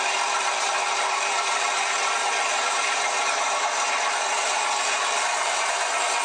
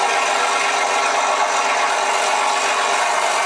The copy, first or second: first